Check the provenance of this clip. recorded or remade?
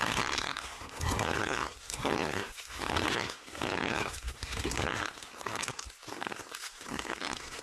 remade